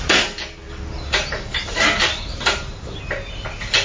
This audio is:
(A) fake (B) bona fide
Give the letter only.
B